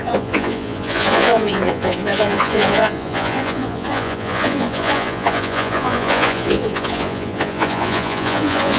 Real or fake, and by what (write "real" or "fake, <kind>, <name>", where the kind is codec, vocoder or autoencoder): fake, vocoder, Vocos